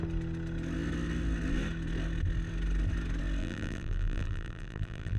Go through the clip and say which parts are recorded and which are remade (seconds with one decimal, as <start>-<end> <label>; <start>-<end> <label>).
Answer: 0.0-3.4 recorded; 3.4-5.2 remade